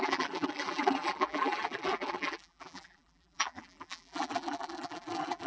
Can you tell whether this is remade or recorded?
remade